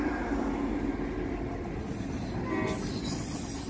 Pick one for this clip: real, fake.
real